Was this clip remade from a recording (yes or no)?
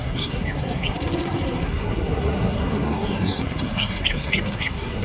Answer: yes